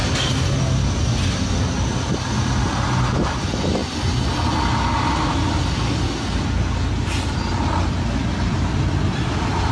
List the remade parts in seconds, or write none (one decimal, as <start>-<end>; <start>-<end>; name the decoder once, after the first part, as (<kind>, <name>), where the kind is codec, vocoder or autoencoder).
none